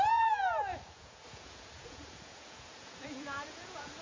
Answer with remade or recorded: remade